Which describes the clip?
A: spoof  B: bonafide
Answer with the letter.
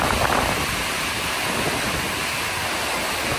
B